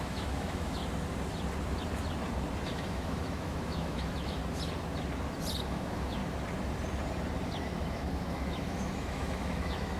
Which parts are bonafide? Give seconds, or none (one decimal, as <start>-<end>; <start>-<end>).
0.8-2.7; 4.4-5.6; 6.2-7.8

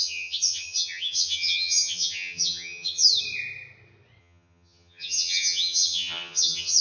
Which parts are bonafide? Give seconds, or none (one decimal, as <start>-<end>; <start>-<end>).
3.1-4.2

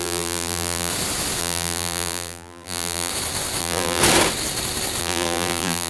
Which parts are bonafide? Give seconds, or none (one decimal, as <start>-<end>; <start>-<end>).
0.9-1.4; 3.1-3.6; 4.0-5.0

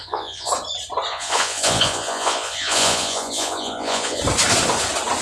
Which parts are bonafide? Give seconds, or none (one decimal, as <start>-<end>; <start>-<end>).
0.5-1.1; 4.2-5.2

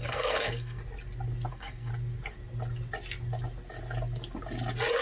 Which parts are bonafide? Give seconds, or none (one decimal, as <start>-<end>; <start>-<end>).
0.8-1.5; 1.9-5.0